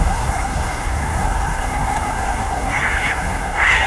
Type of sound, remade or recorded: remade